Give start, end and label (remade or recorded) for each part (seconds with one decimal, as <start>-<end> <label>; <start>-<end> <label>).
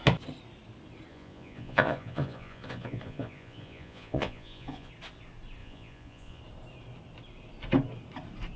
0.0-1.1 recorded; 1.1-4.9 remade; 4.9-5.6 recorded; 5.6-6.4 remade; 6.4-8.6 recorded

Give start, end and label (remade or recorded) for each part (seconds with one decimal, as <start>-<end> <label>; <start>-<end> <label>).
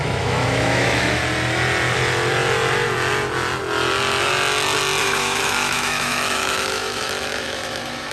0.0-1.2 remade; 1.2-5.0 recorded; 5.0-8.1 remade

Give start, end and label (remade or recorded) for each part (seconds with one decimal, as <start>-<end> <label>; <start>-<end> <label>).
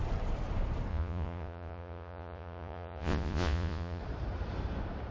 0.0-0.9 recorded; 0.9-4.0 remade; 4.0-5.1 recorded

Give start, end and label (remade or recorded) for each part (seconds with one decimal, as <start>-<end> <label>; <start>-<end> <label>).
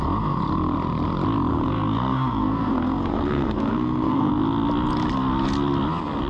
0.0-1.5 recorded; 1.5-4.3 remade; 4.3-6.3 recorded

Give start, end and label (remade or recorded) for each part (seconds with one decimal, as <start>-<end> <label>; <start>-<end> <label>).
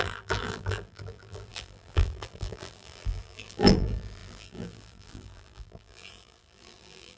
0.0-7.2 remade